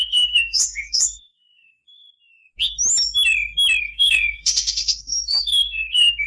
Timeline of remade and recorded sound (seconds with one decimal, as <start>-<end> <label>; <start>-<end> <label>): 0.0-1.8 remade; 1.8-3.8 recorded; 3.8-6.3 remade